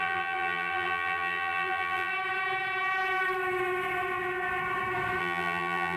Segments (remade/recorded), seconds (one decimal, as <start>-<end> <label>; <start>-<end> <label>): 0.0-2.1 remade; 2.1-5.2 recorded; 5.2-6.0 remade